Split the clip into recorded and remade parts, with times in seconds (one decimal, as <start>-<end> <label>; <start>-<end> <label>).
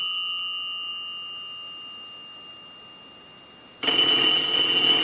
0.0-5.0 recorded